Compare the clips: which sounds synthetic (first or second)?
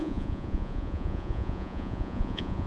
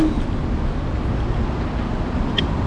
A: first